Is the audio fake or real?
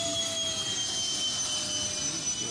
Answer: real